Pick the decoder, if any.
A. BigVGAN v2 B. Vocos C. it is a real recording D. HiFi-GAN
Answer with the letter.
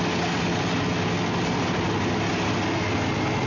C